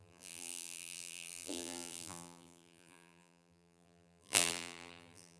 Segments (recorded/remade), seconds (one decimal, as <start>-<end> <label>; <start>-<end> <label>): 0.0-5.4 remade